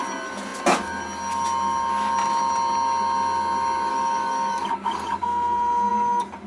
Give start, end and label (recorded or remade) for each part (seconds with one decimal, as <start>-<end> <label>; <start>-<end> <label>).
0.0-3.9 recorded; 3.9-5.2 remade; 5.2-6.5 recorded